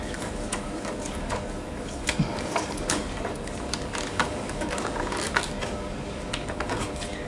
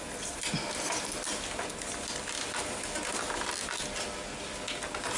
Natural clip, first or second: second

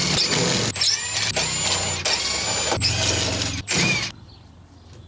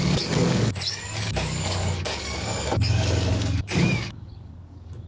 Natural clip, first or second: first